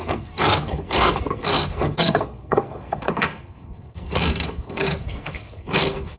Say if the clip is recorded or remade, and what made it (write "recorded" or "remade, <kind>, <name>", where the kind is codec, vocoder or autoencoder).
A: remade, codec, SNAC